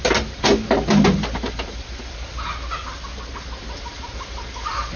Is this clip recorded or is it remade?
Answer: recorded